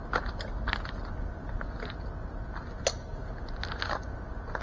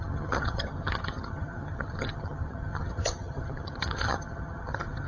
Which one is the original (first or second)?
first